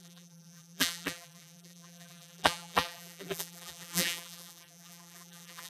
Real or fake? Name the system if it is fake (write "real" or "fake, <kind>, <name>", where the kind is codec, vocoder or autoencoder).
fake, vocoder, BigVGAN v2